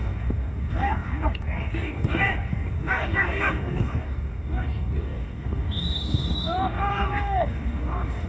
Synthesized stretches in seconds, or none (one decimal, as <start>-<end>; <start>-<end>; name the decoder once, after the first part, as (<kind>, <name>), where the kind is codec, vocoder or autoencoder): 0.0-8.3 (codec, DAC)